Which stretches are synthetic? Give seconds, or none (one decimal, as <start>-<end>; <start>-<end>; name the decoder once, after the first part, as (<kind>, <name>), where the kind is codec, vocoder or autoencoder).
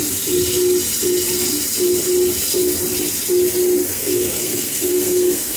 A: 3.8-5.6 (codec, SNAC)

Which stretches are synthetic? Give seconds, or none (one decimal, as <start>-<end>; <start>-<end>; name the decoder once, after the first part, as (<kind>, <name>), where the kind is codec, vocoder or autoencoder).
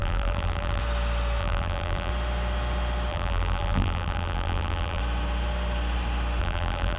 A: 0.0-0.8 (vocoder, BigVGAN v2); 1.4-2.1; 3.1-5.0; 6.4-7.0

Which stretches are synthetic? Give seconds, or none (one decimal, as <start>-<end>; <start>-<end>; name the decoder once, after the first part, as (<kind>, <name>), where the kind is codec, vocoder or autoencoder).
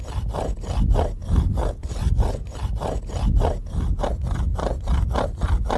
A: none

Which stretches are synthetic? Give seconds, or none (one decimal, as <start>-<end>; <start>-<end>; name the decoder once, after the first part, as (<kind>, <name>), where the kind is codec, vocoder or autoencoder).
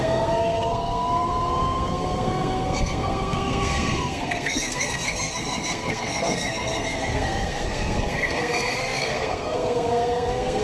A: 0.0-10.6 (codec, SNAC)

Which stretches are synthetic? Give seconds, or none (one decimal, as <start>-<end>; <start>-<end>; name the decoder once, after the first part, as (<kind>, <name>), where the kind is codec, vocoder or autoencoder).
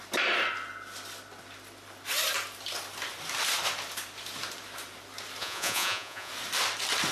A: 5.4-6.3 (vocoder, Vocos)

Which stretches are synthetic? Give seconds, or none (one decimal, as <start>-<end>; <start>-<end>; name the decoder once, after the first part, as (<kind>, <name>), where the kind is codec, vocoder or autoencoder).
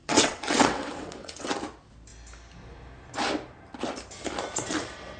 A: 0.0-1.5 (vocoder, WaveNeXt)